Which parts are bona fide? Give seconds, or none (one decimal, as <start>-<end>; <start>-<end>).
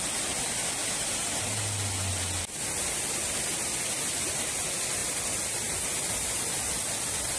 0.0-7.4